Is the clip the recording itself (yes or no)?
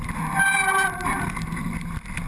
yes